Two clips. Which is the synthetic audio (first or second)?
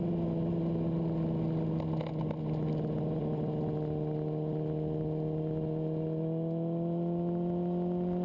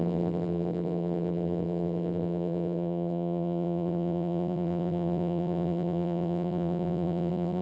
second